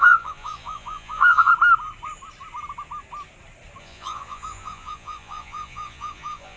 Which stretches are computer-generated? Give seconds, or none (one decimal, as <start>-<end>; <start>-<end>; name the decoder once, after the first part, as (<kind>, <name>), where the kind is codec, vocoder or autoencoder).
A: 0.0-1.5 (vocoder, Vocos); 3.8-6.6

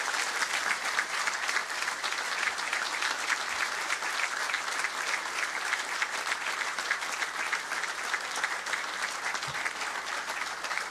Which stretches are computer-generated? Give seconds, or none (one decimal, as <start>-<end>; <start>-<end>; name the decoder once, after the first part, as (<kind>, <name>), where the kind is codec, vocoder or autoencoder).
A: 1.6-3.1 (vocoder, BigVGAN v2)

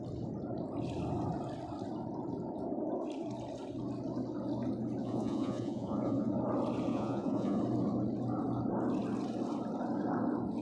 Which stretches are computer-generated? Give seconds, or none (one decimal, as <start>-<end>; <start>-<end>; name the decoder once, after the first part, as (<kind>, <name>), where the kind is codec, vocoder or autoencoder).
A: 5.0-6.3 (vocoder, Vocos); 6.9-7.6

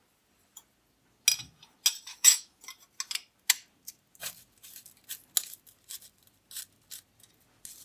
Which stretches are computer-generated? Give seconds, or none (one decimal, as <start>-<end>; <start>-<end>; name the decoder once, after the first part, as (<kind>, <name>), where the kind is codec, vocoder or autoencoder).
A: 2.1-2.6 (autoencoder, DAC-VAE)

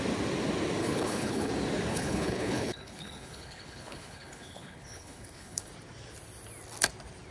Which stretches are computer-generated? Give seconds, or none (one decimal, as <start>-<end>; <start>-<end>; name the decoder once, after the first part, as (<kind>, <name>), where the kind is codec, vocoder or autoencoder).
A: 0.8-1.5 (codec, HILCodec); 1.9-5.7